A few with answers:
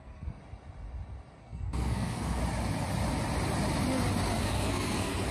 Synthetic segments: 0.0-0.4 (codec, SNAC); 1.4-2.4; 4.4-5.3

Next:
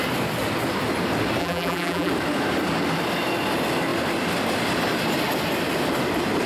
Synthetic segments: 1.4-2.1 (vocoder, BigVGAN v2)

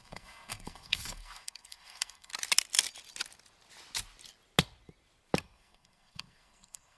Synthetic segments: 0.0-2.3 (codec, SNAC); 5.4-7.0

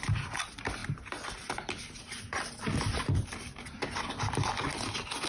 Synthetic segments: 0.8-4.0 (vocoder, BigVGAN v2)

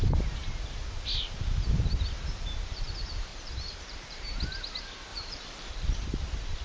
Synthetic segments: 3.3-4.4 (vocoder, BigVGAN v2); 5.1-5.7

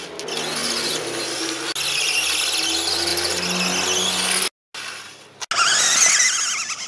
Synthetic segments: none

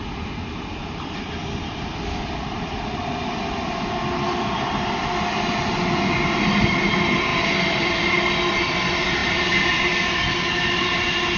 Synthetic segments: none